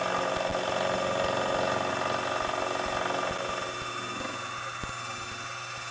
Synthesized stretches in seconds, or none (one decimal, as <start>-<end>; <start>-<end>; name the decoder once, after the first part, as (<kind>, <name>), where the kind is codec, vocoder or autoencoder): none